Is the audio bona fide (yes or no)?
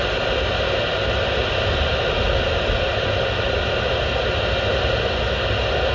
yes